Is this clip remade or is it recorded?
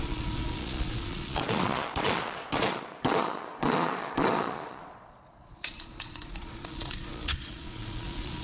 remade